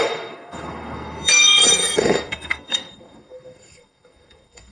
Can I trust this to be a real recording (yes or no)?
no